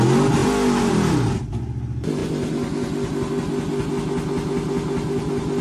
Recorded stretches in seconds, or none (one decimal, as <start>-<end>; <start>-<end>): 0.0-5.6